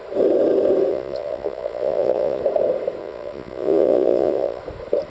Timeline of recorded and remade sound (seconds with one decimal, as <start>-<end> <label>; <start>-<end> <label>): 0.0-0.9 recorded; 0.9-2.4 remade; 2.4-3.0 recorded; 3.0-4.6 remade; 4.6-5.1 recorded